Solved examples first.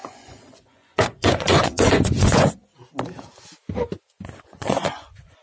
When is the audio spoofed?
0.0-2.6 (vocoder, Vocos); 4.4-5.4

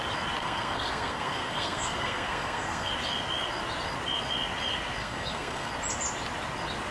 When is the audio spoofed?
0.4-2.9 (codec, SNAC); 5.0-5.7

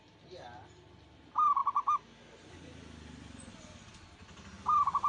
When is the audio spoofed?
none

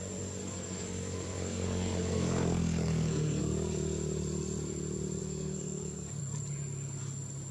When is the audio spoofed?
0.4-3.4 (codec, SNAC); 5.2-6.2

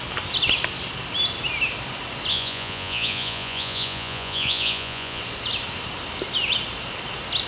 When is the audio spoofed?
2.3-5.2 (vocoder, Vocos)

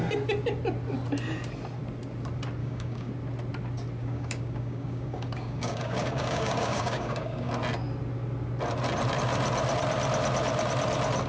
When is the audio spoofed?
2.6-3.1 (codec, DAC); 4.0-7.5